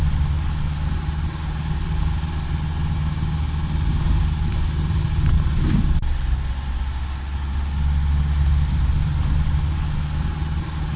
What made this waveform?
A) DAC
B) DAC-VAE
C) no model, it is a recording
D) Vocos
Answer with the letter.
C